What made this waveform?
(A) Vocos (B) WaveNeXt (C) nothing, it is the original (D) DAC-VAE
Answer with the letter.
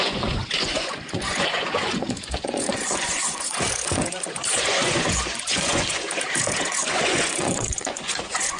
A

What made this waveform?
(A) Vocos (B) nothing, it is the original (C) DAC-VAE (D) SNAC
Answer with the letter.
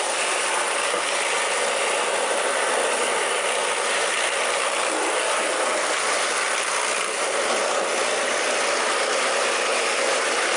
B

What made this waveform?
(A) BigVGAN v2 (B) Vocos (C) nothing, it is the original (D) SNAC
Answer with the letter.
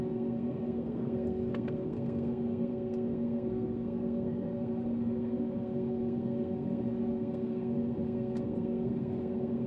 D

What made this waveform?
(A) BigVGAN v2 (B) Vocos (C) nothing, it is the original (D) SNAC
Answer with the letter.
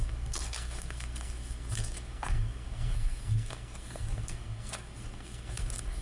D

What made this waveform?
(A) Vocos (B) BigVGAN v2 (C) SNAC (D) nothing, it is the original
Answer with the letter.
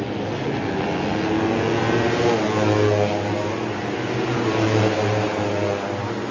D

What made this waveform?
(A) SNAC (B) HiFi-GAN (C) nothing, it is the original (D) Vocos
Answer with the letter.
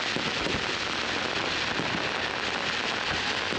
C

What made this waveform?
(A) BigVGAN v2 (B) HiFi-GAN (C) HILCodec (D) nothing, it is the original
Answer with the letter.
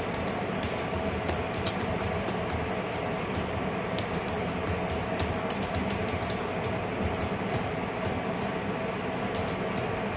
D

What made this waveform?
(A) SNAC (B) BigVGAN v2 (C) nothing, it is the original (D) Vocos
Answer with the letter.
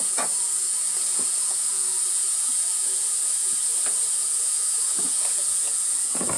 D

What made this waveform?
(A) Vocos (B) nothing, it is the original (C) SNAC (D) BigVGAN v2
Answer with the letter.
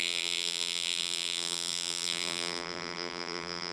D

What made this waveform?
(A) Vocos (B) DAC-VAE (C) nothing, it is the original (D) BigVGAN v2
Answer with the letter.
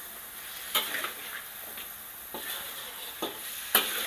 C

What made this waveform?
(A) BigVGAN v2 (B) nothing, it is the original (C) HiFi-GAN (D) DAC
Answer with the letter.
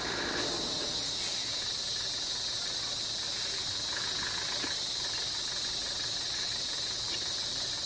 B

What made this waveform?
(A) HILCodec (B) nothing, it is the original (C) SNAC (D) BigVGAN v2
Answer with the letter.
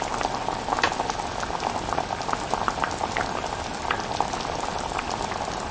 D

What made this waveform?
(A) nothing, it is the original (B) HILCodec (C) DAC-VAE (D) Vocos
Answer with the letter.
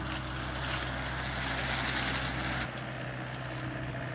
A